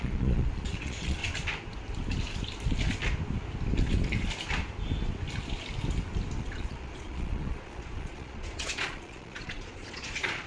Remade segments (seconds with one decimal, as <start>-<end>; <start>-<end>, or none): 0.0-1.2; 6.4-10.5